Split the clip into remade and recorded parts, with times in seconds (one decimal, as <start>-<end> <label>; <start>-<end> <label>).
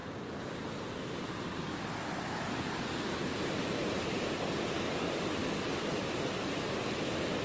0.0-7.4 recorded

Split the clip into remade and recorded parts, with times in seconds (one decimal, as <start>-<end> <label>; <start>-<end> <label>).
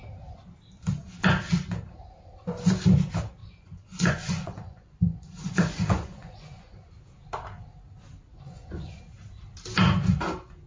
0.0-3.4 recorded; 3.4-6.9 remade; 6.9-8.3 recorded; 8.3-9.0 remade; 9.0-10.7 recorded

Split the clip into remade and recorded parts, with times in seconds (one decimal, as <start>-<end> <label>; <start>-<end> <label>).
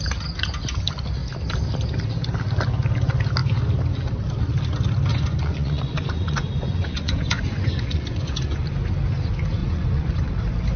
0.0-5.1 recorded; 5.1-8.7 remade; 8.7-9.6 recorded; 9.6-10.4 remade; 10.4-10.8 recorded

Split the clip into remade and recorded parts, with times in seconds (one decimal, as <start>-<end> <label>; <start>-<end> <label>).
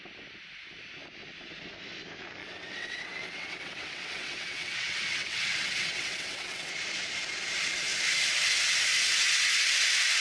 0.0-2.4 recorded; 2.4-6.7 remade; 6.7-10.2 recorded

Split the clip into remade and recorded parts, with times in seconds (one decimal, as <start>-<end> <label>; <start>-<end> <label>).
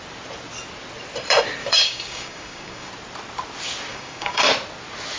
0.0-1.6 recorded; 1.6-2.9 remade; 2.9-3.9 recorded; 3.9-4.5 remade; 4.5-5.2 recorded